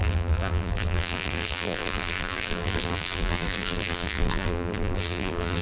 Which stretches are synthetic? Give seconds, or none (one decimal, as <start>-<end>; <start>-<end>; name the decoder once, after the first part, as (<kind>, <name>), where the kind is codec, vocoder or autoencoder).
0.0-5.6 (vocoder, BigVGAN v2)